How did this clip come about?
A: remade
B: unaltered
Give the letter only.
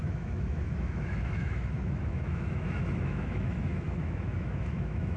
A